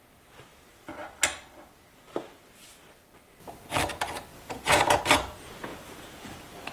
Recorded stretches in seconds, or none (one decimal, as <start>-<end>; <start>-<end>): 0.0-4.3; 5.0-5.7; 6.3-6.7